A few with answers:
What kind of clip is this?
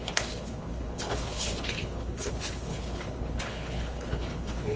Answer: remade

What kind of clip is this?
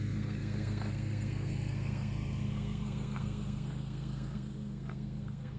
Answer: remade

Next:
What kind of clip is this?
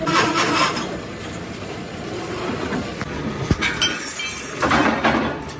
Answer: recorded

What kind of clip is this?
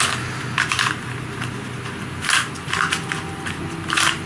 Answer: recorded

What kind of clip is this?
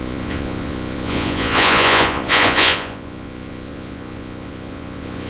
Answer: remade